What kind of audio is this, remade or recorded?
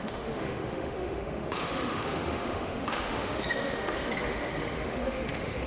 remade